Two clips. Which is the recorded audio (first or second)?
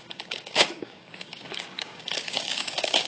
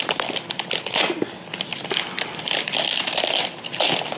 second